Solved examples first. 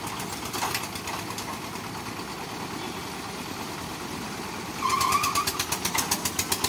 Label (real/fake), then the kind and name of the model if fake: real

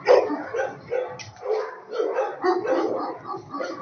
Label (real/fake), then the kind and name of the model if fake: real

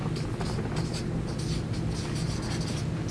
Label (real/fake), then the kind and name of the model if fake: real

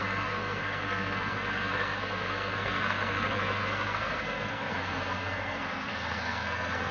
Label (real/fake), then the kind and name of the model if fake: fake, codec, SNAC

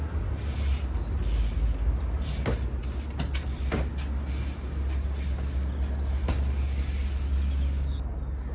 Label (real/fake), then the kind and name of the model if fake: real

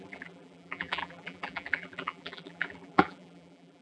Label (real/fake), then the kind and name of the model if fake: fake, vocoder, BigVGAN v2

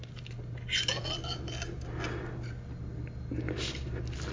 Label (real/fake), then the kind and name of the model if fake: real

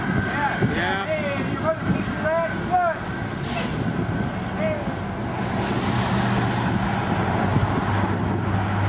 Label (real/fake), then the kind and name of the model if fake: real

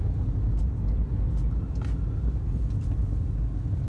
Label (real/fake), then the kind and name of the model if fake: real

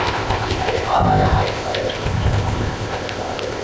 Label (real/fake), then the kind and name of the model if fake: fake, codec, ZipCodec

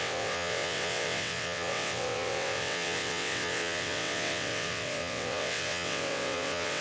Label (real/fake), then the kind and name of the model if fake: fake, vocoder, WaveNeXt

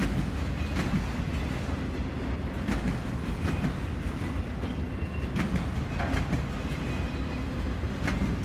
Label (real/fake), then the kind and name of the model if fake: real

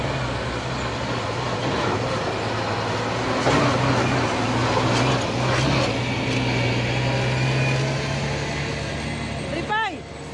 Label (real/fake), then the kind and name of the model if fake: real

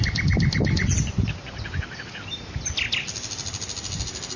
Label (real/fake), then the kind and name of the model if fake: real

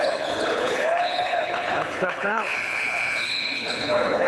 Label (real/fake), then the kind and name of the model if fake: fake, codec, HILCodec